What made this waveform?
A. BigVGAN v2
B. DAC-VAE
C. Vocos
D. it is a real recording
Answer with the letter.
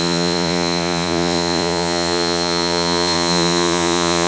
C